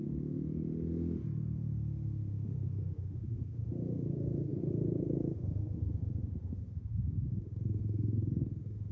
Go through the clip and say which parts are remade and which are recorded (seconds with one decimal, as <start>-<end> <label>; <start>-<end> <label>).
0.0-1.2 remade; 1.2-2.3 recorded; 2.3-8.9 remade